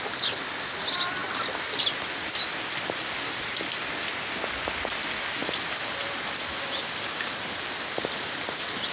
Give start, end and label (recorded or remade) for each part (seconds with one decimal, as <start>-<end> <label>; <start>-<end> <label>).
0.0-1.2 recorded; 1.2-2.0 remade; 2.0-5.4 recorded; 5.4-8.0 remade; 8.0-8.9 recorded